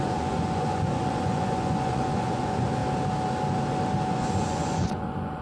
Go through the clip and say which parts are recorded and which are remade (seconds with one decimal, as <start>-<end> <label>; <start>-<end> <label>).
0.0-2.8 remade; 2.8-4.1 recorded; 4.1-5.4 remade